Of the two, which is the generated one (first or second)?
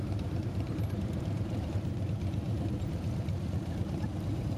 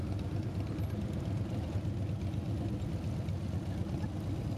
first